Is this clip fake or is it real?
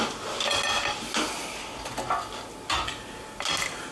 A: real